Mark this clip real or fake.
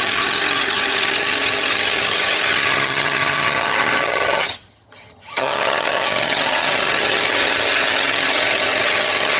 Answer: fake